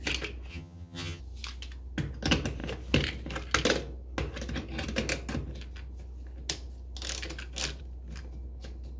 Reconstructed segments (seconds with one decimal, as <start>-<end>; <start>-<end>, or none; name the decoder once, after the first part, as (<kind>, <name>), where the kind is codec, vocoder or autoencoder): 0.5-1.2 (vocoder, HiFi-GAN)